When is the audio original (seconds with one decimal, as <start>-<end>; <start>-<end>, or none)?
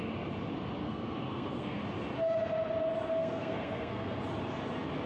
0.0-0.8; 1.8-3.1; 4.2-5.1